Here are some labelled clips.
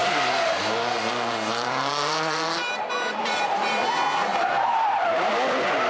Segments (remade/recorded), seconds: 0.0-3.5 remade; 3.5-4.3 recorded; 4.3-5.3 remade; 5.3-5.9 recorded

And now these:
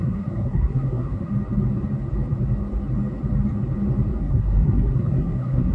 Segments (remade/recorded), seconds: 0.0-1.3 remade; 1.3-4.2 recorded; 4.2-5.7 remade